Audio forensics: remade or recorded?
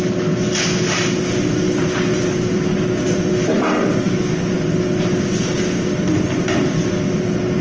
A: recorded